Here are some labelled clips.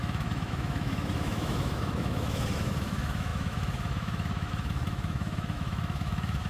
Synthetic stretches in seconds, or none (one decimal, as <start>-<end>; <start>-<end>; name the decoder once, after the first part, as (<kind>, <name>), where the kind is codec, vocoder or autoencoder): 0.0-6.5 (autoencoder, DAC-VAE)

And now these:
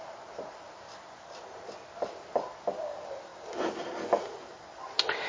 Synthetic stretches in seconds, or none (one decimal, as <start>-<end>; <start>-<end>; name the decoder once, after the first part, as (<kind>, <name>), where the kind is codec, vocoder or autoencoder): none

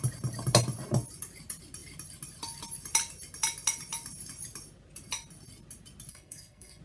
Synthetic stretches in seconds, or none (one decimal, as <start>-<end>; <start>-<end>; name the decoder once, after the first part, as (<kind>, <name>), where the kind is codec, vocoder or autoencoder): 6.1-6.8 (codec, SNAC)

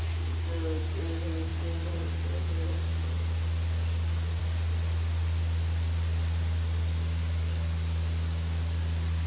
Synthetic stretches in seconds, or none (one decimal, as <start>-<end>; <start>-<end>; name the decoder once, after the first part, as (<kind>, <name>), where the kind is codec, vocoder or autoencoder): none

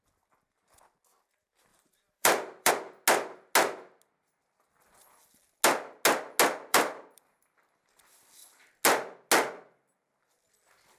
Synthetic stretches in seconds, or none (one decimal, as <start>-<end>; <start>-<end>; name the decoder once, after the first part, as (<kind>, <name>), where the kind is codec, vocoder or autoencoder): 1.7-2.7 (vocoder, BigVGAN v2); 6.7-7.4